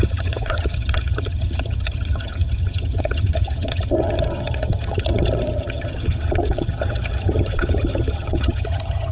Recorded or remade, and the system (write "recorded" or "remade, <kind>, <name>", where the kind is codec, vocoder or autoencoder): remade, vocoder, HiFi-GAN